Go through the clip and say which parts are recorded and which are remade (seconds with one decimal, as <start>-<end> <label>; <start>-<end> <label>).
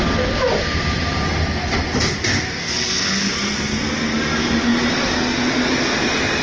0.0-2.6 recorded; 2.6-3.3 remade; 3.3-6.4 recorded